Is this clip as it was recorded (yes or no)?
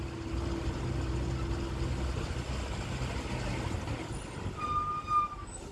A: yes